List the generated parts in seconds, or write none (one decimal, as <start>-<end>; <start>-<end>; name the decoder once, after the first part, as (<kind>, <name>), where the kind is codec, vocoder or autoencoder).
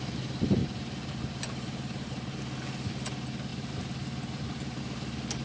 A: 0.6-2.4 (vocoder, BigVGAN v2); 3.5-4.8